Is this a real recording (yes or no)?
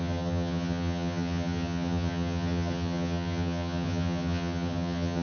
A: no